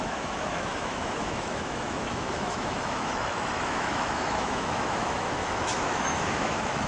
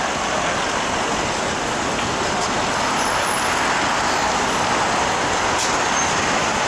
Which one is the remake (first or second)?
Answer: first